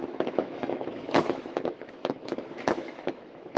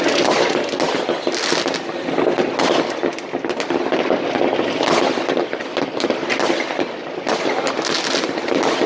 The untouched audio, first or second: second